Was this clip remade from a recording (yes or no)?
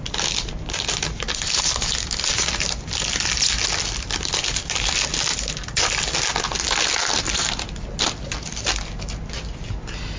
no